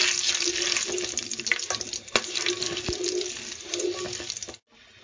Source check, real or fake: real